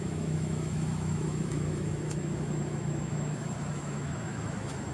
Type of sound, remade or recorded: remade